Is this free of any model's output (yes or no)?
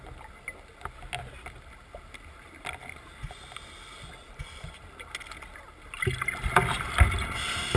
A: yes